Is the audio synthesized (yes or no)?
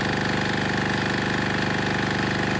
no